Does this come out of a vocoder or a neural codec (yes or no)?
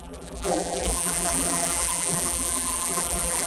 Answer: yes